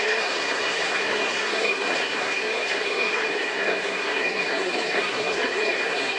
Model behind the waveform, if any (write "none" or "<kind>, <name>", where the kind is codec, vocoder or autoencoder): codec, SNAC